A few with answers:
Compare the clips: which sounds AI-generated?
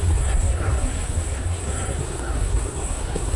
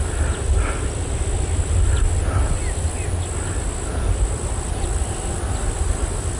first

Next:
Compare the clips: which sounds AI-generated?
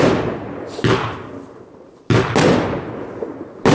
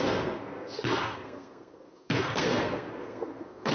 second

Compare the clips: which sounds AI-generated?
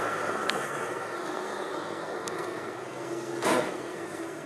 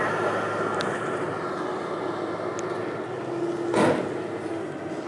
first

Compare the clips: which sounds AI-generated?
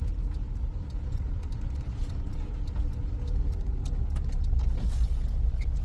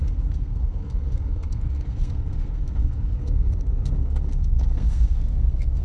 second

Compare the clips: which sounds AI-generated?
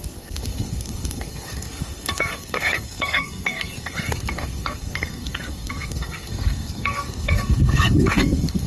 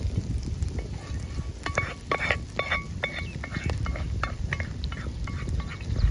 first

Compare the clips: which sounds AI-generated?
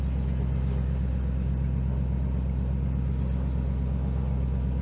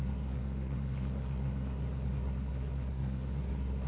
second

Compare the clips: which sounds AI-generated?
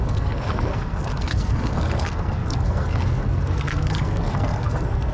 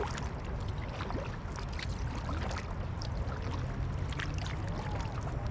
first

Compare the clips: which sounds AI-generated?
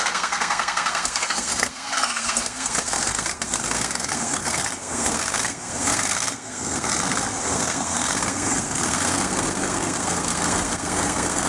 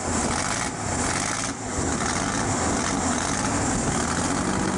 first